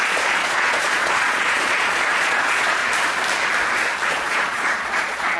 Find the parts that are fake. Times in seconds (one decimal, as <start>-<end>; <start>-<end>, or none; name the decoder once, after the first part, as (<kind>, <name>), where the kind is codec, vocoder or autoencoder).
0.0-2.8 (vocoder, Vocos); 4.1-5.4